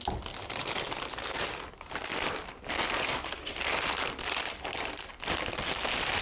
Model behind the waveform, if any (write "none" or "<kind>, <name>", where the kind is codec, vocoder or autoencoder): none